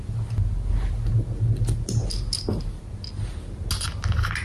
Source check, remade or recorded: recorded